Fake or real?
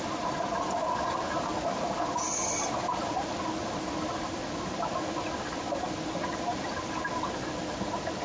real